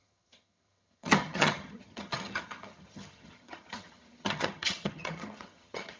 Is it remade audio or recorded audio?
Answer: remade